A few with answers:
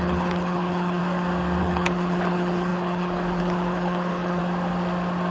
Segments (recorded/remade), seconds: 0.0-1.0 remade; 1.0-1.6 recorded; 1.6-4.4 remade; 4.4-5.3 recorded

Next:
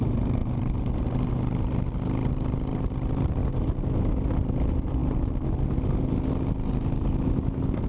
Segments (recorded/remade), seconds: 0.0-7.9 recorded

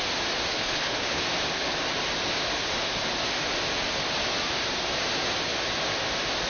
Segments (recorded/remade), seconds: 0.0-0.5 recorded; 0.5-1.2 remade; 1.2-6.5 recorded

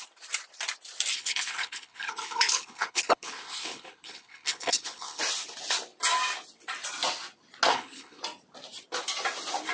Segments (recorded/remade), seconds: 0.0-1.1 recorded; 1.1-5.2 remade; 5.2-7.7 recorded; 7.7-8.2 remade; 8.2-9.7 recorded